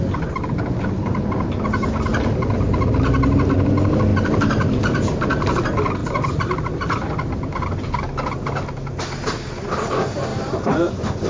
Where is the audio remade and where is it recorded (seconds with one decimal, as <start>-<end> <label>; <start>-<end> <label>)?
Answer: 0.0-6.0 recorded; 6.0-7.6 remade; 7.6-10.3 recorded; 10.3-10.9 remade; 10.9-11.3 recorded